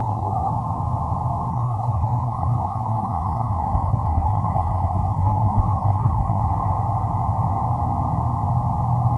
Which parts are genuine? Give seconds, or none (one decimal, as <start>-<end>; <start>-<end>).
0.5-1.5; 6.4-9.2